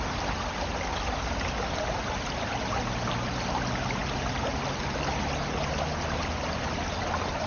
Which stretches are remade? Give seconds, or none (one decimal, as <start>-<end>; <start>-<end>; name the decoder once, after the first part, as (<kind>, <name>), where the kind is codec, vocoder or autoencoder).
none